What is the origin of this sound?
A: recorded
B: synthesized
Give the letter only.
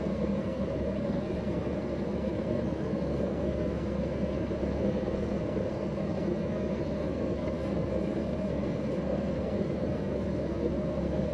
B